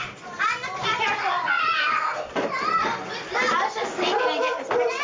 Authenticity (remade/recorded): recorded